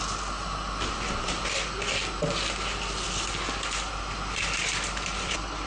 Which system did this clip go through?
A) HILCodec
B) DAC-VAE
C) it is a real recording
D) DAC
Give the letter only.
C